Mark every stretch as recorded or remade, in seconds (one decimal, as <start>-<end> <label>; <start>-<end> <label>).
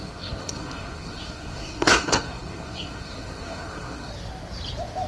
0.0-4.1 remade; 4.1-5.1 recorded